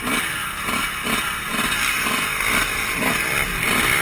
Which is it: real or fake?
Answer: fake